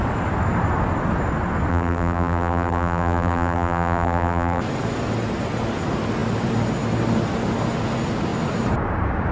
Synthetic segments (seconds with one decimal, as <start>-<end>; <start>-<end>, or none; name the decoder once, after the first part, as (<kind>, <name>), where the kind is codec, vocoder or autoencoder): 1.7-4.6 (vocoder, BigVGAN v2)